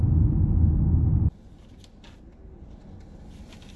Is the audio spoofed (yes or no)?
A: no